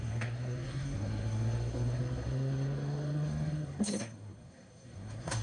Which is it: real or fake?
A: fake